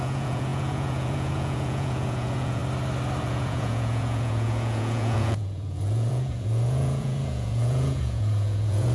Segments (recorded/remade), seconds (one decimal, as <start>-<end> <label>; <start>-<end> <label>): 0.0-2.6 remade; 2.6-3.2 recorded; 3.2-8.9 remade